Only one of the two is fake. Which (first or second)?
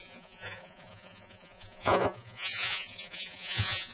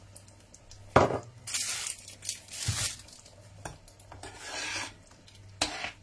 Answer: first